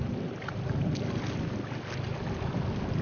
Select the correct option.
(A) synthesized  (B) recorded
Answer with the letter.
B